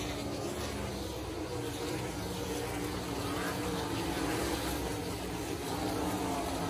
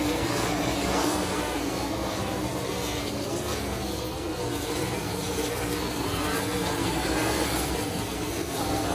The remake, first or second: second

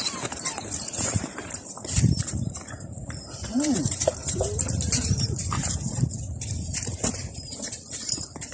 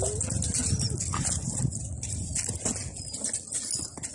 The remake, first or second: first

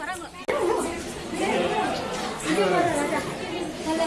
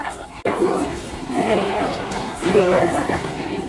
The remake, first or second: second